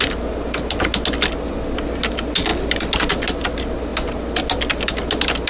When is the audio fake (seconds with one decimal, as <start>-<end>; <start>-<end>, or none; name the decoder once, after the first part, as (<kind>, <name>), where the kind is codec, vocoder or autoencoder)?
none